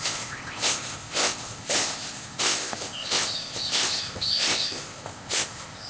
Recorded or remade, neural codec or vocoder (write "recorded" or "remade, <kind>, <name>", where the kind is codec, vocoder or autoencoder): remade, codec, ZipCodec